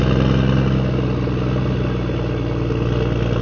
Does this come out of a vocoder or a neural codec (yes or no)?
no